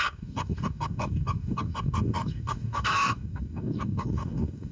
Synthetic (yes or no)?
yes